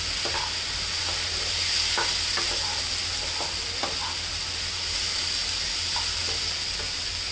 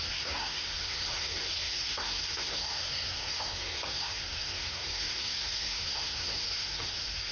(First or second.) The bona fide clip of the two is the first